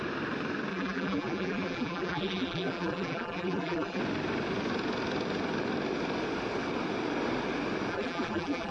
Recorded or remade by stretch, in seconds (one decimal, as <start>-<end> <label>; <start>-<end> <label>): 0.0-0.7 recorded; 0.7-4.0 remade; 4.0-7.9 recorded; 7.9-8.7 remade